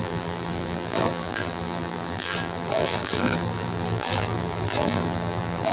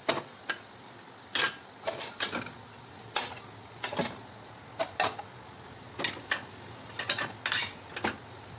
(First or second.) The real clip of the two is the second